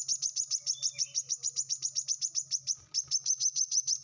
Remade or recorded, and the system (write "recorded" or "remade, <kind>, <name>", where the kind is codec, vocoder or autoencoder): recorded